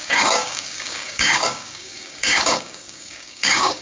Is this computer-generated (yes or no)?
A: yes